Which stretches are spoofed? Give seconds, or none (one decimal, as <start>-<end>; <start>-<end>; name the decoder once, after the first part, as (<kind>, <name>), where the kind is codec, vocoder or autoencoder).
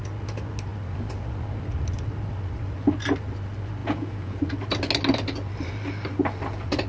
3.8-4.4 (vocoder, Vocos)